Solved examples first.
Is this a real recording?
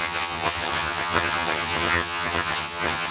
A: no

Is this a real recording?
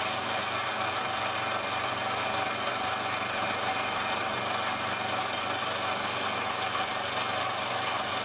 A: yes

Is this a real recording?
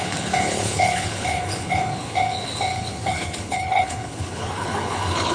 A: no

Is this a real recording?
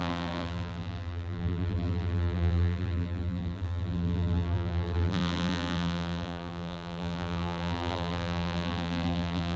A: no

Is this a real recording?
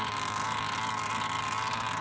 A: yes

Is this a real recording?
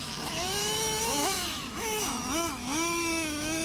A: no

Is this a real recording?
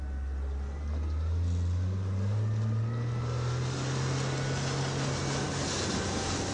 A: yes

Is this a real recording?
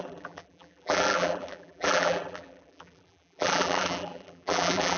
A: no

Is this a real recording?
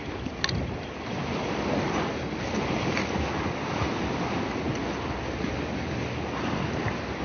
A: yes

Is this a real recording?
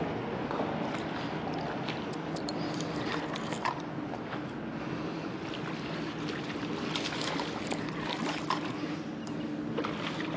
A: yes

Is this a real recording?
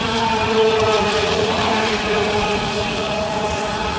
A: no